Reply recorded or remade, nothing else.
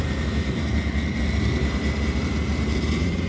remade